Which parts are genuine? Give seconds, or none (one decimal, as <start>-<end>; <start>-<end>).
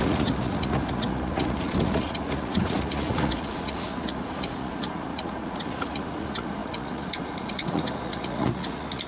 none